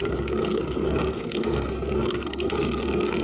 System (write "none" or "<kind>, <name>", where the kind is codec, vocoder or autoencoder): codec, SNAC